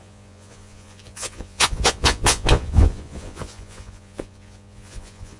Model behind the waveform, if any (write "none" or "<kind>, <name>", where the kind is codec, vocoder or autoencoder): vocoder, Vocos